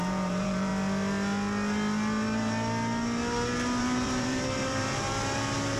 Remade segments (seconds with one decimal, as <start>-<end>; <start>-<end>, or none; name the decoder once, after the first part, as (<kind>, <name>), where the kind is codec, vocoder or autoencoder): 0.0-0.7 (vocoder, BigVGAN v2); 3.8-5.8